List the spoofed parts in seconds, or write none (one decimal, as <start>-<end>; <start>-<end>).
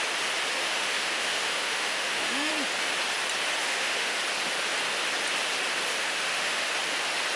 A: 0.6-2.5; 3.6-4.2; 6.0-6.7